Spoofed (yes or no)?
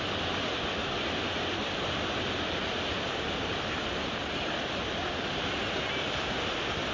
no